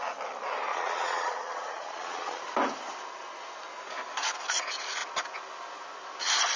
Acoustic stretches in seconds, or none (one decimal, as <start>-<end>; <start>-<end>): 0.0-0.7; 2.4-6.6

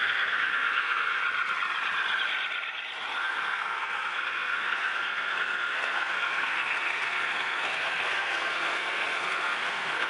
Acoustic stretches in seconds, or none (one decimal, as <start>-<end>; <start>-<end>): 1.2-3.2